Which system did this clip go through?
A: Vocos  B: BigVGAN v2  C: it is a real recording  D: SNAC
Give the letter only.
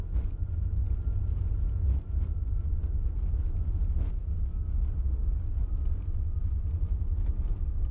C